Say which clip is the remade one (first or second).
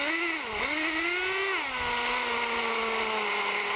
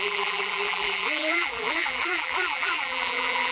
second